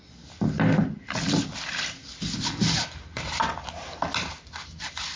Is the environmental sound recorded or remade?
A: recorded